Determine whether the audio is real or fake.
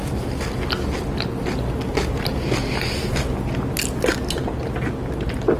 real